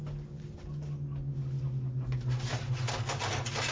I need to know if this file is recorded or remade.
recorded